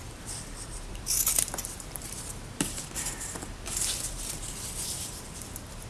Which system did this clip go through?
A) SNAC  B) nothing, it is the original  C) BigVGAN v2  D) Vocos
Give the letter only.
C